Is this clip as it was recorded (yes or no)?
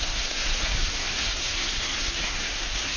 no